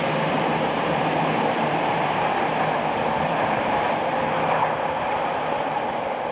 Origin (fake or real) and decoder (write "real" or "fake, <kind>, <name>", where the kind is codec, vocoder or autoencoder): fake, vocoder, BigVGAN v2